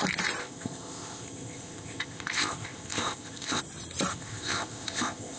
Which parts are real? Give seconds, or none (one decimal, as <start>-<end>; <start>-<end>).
0.0-0.4; 3.6-4.1